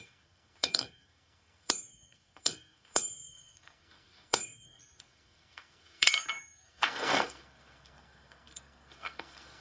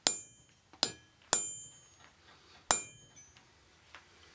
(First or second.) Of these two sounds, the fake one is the first